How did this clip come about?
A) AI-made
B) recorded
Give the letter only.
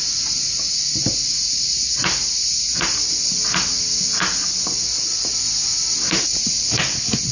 B